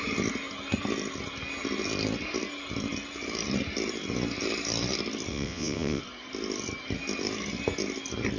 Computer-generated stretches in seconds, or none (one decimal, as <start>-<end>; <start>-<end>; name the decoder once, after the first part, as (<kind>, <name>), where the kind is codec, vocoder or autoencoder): 5.3-6.0 (vocoder, WaveNeXt)